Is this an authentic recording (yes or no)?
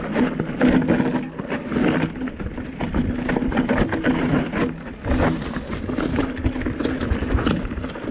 yes